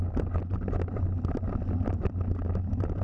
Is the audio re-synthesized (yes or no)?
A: no